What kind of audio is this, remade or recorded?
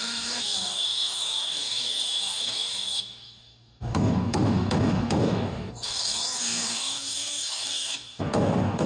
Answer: remade